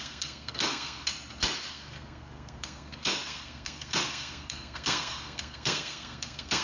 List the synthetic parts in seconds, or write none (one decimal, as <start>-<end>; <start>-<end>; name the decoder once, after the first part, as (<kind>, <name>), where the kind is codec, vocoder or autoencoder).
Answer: 0.0-1.1 (codec, SNAC); 1.7-6.6